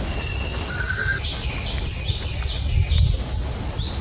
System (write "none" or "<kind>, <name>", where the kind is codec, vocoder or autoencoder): none